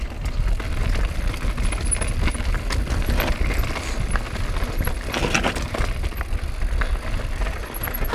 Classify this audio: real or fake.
real